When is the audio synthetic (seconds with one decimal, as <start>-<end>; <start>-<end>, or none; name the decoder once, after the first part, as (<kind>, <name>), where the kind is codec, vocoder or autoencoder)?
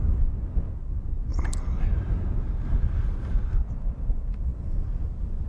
none